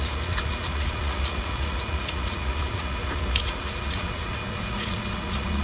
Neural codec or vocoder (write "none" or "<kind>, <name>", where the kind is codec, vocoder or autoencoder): vocoder, Vocos